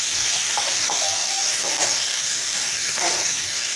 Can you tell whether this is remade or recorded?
remade